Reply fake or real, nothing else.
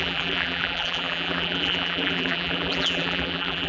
fake